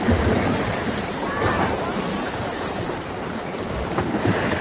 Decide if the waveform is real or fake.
fake